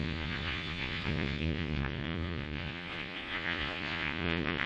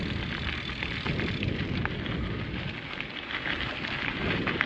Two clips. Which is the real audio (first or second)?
second